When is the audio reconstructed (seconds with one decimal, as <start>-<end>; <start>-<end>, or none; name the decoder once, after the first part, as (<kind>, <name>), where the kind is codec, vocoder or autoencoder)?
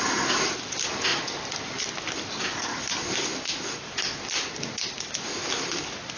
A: none